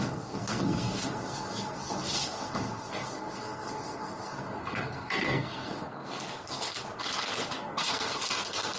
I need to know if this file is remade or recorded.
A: remade